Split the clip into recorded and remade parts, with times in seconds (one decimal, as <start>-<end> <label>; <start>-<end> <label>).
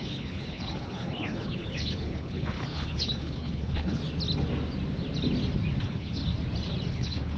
0.0-4.0 remade; 4.0-5.8 recorded; 5.8-6.2 remade; 6.2-6.9 recorded; 6.9-7.4 remade